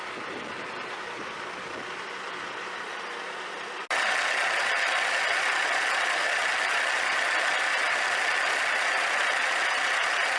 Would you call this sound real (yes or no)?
yes